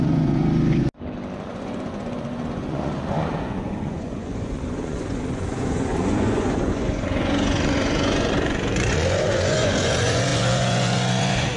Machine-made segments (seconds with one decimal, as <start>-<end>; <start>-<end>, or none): 0.0-0.4; 1.5-11.6